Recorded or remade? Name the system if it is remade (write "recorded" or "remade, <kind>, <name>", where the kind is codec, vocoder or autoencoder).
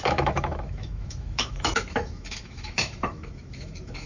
remade, autoencoder, DAC-VAE